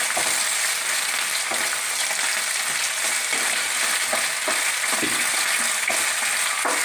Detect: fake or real real